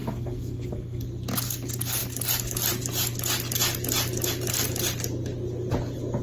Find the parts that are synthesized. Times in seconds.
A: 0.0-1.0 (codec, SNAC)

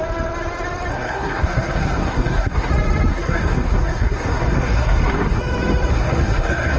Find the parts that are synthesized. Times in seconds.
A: 0.9-2.7 (codec, SNAC); 3.1-5.4; 5.9-6.8

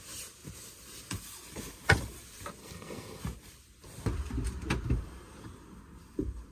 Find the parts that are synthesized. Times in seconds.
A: 2.6-3.2 (codec, SNAC)

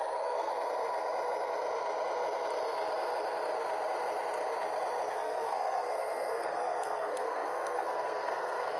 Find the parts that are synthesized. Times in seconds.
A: 0.0-0.5 (codec, SNAC); 5.1-8.8